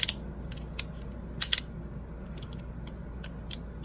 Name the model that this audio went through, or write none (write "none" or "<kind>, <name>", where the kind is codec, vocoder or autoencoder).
none